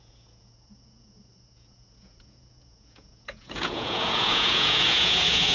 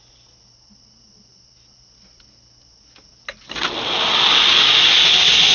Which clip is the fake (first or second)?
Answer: first